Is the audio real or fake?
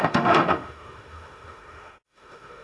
fake